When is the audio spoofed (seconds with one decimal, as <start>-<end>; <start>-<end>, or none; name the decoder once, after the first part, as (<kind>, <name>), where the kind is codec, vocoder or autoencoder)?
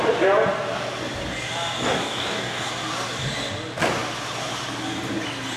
1.9-2.7 (codec, DAC)